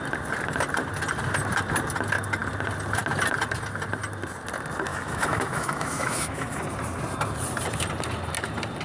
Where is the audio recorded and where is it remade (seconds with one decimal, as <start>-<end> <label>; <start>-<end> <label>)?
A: 0.0-4.9 recorded; 4.9-6.6 remade; 6.6-8.8 recorded